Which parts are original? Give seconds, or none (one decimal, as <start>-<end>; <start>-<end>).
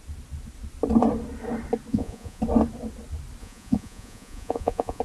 0.0-1.9; 2.4-3.4